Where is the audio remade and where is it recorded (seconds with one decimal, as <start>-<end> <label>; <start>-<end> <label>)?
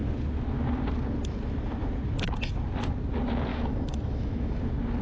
0.0-3.5 recorded; 3.5-4.6 remade; 4.6-5.0 recorded